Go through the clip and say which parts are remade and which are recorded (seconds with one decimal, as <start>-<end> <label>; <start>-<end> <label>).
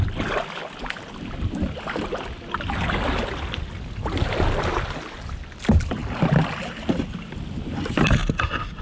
0.0-6.0 recorded; 6.0-7.3 remade; 7.3-8.2 recorded; 8.2-8.8 remade